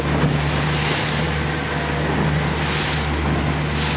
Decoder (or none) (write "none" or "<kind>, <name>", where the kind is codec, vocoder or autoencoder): none